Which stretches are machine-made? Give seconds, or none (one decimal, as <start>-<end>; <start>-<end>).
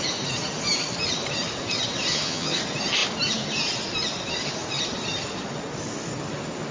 2.1-2.6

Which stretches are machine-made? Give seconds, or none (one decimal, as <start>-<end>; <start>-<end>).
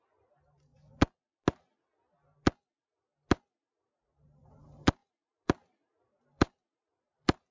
0.0-0.7; 3.8-7.5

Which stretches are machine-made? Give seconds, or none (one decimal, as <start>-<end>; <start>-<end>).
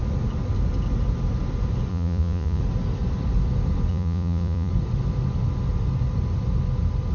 1.9-2.6; 3.9-4.7